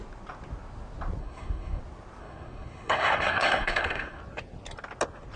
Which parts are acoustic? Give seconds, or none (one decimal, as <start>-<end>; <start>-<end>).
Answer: 0.0-1.2; 1.8-2.2; 4.2-5.4